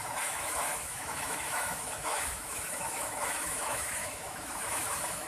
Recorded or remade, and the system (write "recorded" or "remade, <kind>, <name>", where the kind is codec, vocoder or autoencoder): remade, autoencoder, DAC-VAE